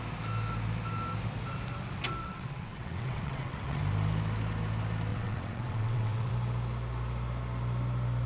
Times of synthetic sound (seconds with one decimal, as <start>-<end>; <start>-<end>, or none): 2.2-3.8; 5.1-6.3